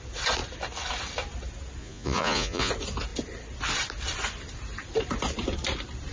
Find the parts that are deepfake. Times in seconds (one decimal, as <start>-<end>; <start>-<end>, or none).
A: 1.8-2.7